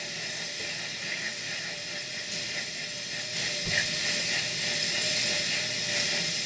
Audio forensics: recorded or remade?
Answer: recorded